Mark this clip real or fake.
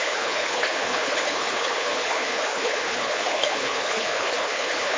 fake